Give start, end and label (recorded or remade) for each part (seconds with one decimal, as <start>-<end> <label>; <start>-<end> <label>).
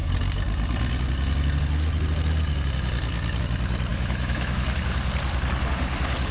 0.0-3.9 recorded; 3.9-4.8 remade; 4.8-6.3 recorded